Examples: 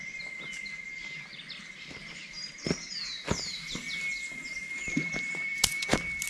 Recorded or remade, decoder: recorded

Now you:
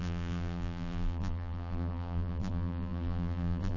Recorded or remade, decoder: remade, vocoder, BigVGAN v2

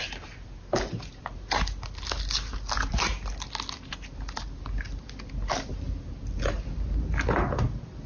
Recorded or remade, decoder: recorded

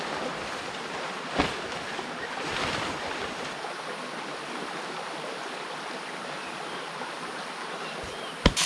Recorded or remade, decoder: remade, vocoder, BigVGAN v2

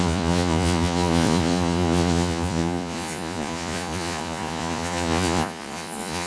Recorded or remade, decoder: remade, vocoder, Vocos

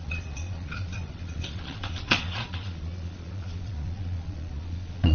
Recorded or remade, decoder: remade, vocoder, Vocos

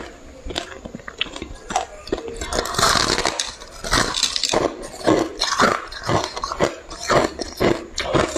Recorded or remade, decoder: recorded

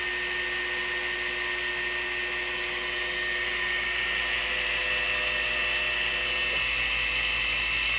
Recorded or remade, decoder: recorded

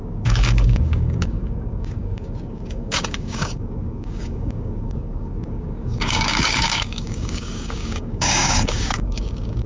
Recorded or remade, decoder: remade, codec, DAC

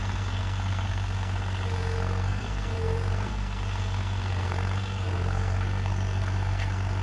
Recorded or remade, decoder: remade, codec, SNAC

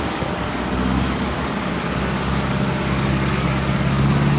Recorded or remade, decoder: remade, codec, DAC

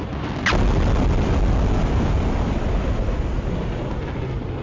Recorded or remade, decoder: recorded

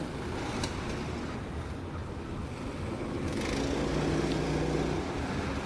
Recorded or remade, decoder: recorded